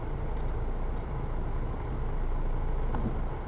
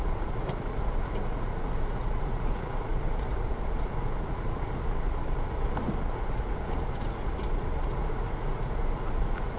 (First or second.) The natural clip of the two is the first